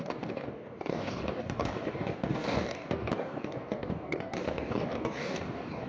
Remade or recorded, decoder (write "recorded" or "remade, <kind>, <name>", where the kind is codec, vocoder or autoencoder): remade, codec, DAC